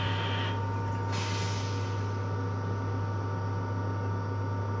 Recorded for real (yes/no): yes